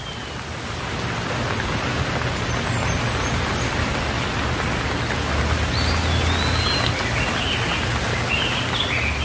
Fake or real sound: real